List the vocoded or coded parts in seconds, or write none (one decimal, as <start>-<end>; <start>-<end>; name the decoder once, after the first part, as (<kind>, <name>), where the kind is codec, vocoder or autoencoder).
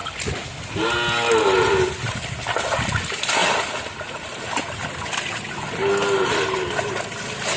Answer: 3.4-6.9 (vocoder, BigVGAN v2)